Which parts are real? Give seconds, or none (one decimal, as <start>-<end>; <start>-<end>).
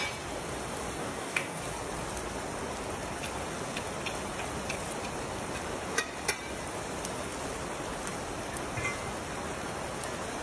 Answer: 0.0-1.0; 1.6-10.4